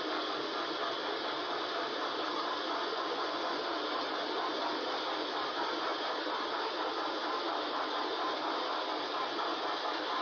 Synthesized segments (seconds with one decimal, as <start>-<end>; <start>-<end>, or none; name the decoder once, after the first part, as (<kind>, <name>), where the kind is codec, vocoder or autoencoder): 2.8-3.6 (vocoder, Vocos)